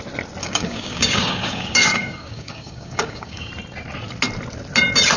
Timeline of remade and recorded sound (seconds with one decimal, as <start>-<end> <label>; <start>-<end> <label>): 0.0-0.4 recorded; 0.4-3.5 remade; 3.5-5.2 recorded